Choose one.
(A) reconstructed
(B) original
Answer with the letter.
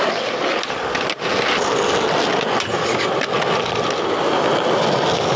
B